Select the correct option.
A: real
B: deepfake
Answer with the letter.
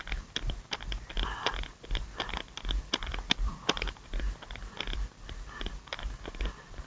A